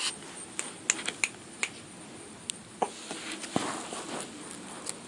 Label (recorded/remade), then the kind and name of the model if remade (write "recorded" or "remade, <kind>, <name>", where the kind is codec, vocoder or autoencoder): recorded